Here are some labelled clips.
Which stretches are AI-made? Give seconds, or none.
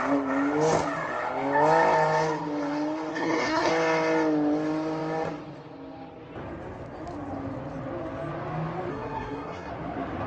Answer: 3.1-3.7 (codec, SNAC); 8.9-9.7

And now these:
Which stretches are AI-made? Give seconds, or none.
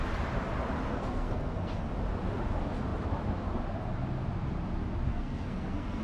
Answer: 0.9-1.9 (codec, SNAC); 5.1-6.0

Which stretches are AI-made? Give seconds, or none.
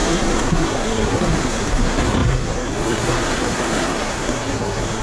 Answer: 0.0-5.0 (codec, SNAC)